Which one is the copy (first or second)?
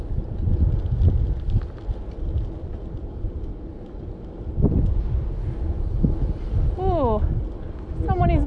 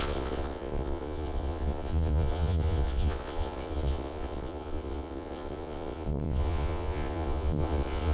second